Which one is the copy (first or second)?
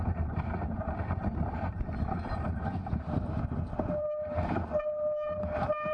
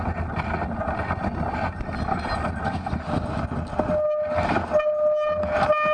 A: first